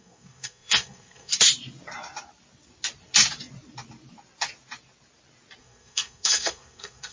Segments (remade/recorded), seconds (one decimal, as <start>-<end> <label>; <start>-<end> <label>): 0.0-1.3 remade; 1.3-5.6 recorded; 5.6-7.1 remade